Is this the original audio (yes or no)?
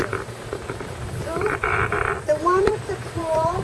no